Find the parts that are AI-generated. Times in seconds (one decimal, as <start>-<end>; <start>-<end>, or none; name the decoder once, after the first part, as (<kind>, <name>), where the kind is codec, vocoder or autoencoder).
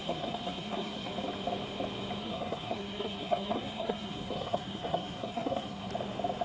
0.0-1.1 (codec, SNAC); 2.2-5.9